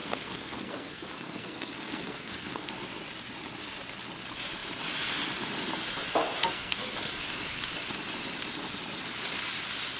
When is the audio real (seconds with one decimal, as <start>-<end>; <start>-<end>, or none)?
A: 2.7-6.4; 7.1-10.0